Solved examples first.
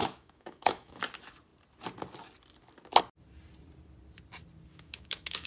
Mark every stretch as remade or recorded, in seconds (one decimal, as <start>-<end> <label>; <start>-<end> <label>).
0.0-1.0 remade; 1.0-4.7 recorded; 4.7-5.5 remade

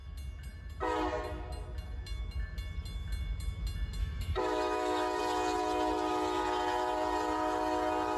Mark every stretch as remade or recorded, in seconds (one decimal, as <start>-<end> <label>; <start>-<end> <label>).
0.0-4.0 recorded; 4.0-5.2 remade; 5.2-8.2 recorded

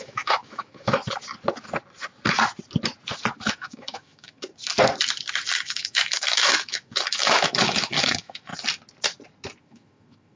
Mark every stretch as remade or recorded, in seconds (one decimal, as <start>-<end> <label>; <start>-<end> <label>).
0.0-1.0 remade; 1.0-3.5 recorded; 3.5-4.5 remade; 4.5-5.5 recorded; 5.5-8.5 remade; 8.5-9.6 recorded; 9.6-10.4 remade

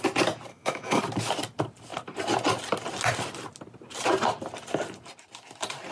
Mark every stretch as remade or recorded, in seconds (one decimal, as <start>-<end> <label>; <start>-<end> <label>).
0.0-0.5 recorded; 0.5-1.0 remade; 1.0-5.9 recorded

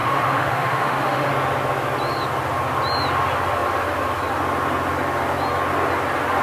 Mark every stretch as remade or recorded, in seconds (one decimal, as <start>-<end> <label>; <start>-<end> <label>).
0.0-1.3 remade; 1.3-6.4 recorded

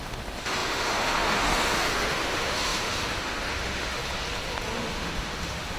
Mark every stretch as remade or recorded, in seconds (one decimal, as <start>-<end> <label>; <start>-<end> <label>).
0.0-4.0 remade; 4.0-4.8 recorded; 4.8-5.8 remade

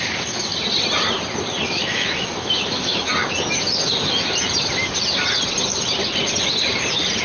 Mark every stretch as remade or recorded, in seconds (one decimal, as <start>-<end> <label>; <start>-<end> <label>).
0.0-0.5 remade; 0.5-1.6 recorded; 1.6-3.1 remade; 3.1-7.2 recorded

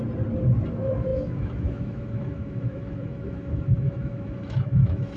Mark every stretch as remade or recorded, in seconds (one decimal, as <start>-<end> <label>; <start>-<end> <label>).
0.0-0.7 recorded; 0.7-5.2 remade